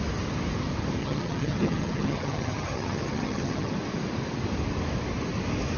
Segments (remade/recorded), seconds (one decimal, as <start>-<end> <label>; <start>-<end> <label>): 0.0-1.0 recorded; 1.0-3.7 remade; 3.7-5.8 recorded